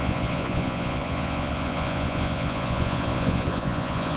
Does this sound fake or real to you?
fake